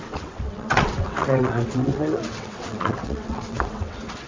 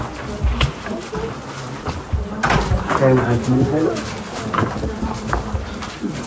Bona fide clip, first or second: second